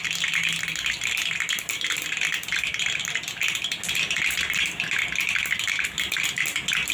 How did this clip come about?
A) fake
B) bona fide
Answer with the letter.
B